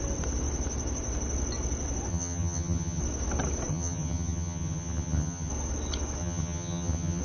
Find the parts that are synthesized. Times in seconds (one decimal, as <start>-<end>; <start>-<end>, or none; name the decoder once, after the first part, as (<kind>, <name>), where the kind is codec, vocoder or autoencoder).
2.1-3.0 (vocoder, HiFi-GAN); 3.7-5.5; 6.2-7.2